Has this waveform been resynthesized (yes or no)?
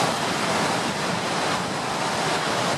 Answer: yes